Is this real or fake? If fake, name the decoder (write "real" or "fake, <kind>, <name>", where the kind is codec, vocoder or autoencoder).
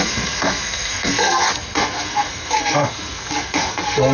fake, codec, SNAC